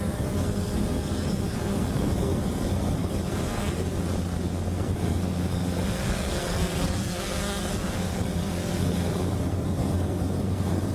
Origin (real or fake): fake